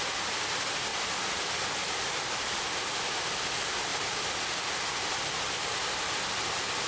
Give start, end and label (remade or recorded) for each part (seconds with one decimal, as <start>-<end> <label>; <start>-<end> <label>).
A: 0.0-6.9 recorded